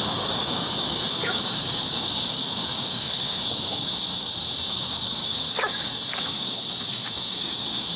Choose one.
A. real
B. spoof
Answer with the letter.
B